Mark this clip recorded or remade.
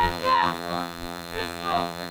remade